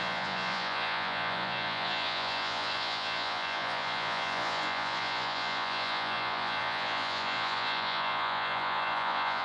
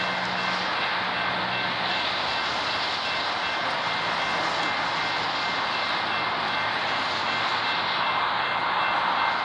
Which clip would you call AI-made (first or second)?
first